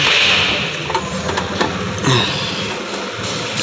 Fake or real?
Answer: real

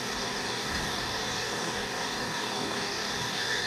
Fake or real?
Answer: fake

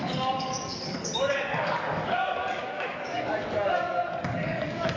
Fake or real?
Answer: fake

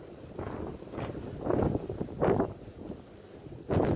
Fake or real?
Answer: real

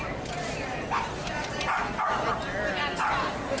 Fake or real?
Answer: real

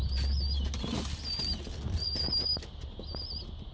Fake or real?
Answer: real